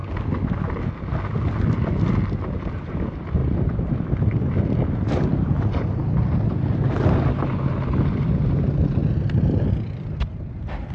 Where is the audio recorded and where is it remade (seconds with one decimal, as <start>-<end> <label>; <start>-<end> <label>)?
0.0-2.6 recorded; 2.6-9.0 remade; 9.0-9.7 recorded; 9.7-10.9 remade